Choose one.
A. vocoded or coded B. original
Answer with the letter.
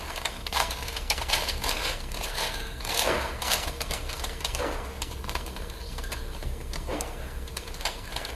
A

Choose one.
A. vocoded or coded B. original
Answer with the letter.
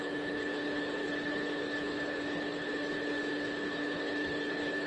A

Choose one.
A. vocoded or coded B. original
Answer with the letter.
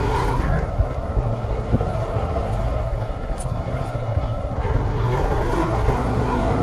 A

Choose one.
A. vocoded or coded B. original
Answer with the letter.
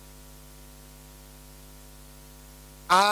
B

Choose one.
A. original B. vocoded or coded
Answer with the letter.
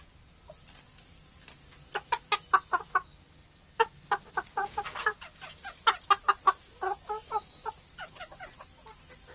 A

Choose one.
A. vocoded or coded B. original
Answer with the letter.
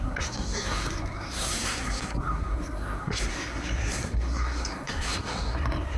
A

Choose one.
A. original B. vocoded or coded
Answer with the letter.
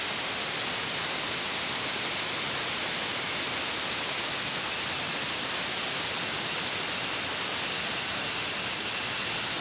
A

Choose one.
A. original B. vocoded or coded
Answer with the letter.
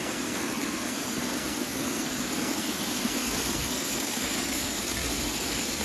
B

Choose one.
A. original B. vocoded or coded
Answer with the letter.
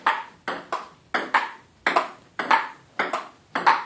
A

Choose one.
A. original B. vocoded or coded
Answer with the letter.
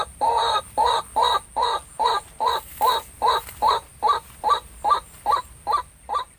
A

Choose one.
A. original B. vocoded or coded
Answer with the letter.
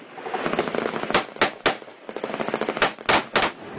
A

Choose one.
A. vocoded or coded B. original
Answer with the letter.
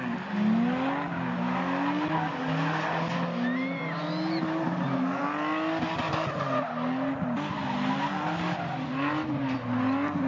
B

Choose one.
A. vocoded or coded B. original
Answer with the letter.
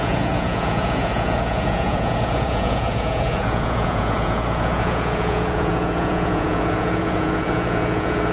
A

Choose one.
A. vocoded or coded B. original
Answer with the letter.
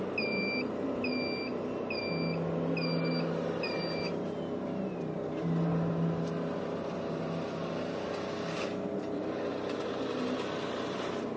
B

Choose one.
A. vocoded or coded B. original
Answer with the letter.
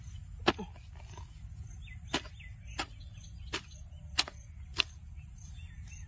B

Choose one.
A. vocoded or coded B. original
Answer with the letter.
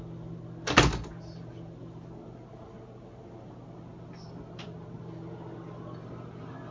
B